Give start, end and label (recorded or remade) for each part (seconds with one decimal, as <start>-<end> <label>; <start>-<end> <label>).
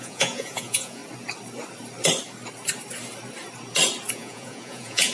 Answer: 0.0-1.0 remade; 1.0-4.1 recorded; 4.1-5.1 remade